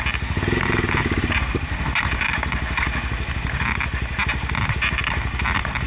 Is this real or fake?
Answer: real